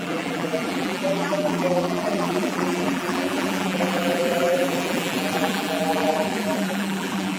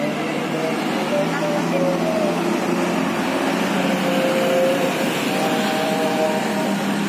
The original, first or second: second